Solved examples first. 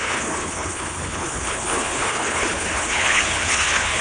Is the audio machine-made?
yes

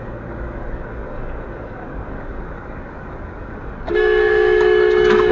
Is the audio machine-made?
yes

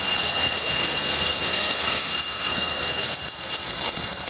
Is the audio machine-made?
yes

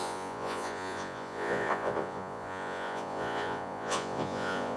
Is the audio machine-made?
yes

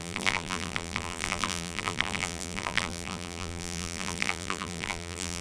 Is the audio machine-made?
yes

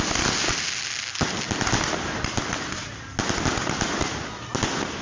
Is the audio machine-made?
no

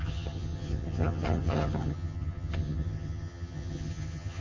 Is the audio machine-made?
yes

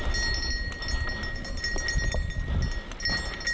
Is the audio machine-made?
no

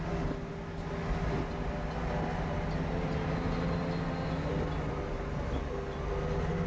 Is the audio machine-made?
no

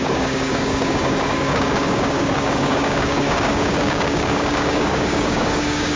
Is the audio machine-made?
yes